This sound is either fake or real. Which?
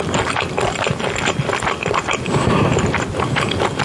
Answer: real